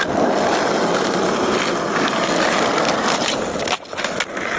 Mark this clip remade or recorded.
recorded